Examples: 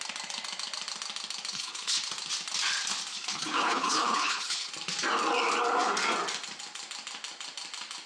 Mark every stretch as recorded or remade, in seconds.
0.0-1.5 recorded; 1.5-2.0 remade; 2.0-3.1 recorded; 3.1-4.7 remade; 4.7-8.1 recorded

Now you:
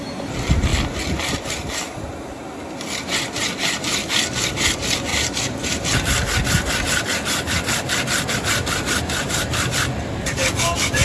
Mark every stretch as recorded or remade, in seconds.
0.0-0.7 remade; 0.7-4.5 recorded; 4.5-5.1 remade; 5.1-8.3 recorded; 8.3-10.4 remade; 10.4-11.0 recorded

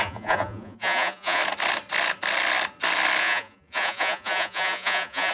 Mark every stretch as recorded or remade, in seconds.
0.0-1.4 remade; 1.4-3.2 recorded; 3.2-5.3 remade